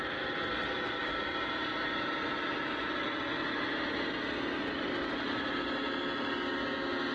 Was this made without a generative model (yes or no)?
yes